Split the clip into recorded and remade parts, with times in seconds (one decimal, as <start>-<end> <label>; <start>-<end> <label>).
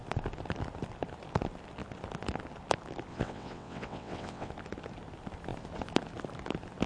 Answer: 0.0-3.1 recorded; 3.1-4.5 remade; 4.5-6.9 recorded